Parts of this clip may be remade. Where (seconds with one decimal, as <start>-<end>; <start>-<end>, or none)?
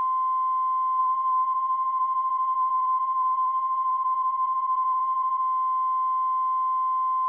1.0-5.4